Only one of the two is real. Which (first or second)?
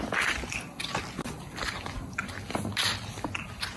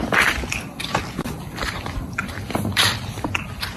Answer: first